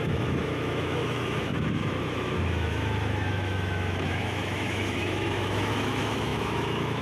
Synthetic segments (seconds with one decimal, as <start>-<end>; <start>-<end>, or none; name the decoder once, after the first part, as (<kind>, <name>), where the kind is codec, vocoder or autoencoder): 0.0-7.0 (autoencoder, DAC-VAE)